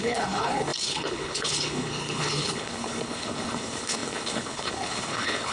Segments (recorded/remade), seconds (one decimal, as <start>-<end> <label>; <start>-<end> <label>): 0.0-5.5 remade